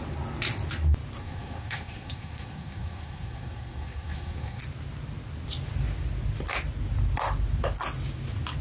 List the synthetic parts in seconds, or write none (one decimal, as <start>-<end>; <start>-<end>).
1.2-4.6